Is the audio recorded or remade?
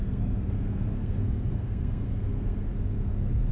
remade